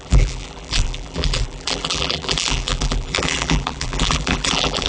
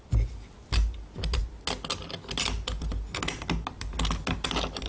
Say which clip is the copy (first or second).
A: first